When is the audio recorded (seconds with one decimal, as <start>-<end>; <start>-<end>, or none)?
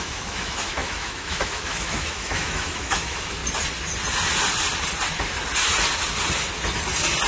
3.4-7.3